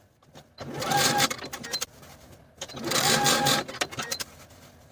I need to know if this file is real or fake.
real